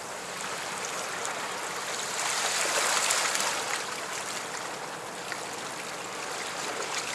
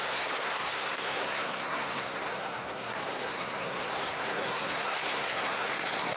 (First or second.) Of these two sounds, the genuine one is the first